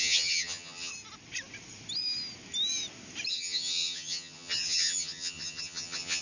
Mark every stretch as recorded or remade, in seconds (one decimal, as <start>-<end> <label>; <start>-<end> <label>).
0.0-0.9 remade; 0.9-3.3 recorded; 3.3-6.2 remade

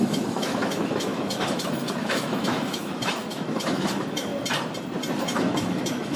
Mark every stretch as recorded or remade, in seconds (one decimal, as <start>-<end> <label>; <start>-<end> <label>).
0.0-4.3 remade; 4.3-5.2 recorded; 5.2-6.2 remade

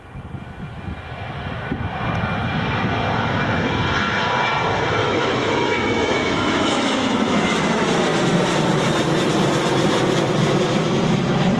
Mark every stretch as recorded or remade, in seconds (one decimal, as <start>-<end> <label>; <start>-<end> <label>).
0.0-5.0 recorded; 5.0-7.6 remade; 7.6-11.6 recorded

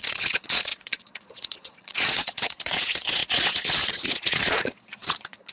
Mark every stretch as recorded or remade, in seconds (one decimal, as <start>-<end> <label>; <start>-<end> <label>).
0.0-5.5 remade

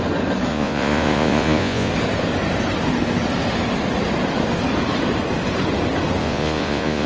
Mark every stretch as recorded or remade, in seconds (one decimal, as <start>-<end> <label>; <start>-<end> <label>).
0.0-0.5 recorded; 0.5-1.9 remade; 1.9-6.2 recorded; 6.2-7.1 remade

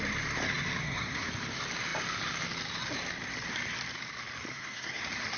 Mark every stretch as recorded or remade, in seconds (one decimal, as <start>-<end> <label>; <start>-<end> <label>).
0.0-0.8 recorded; 0.8-1.3 remade; 1.3-4.5 recorded; 4.5-5.0 remade; 5.0-5.4 recorded